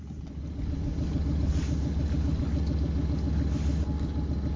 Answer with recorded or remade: recorded